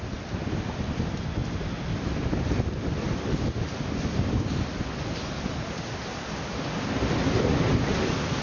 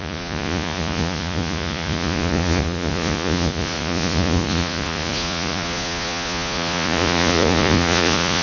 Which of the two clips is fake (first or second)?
second